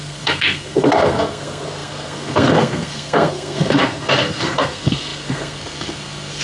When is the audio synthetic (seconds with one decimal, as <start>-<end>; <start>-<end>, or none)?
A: 0.0-6.4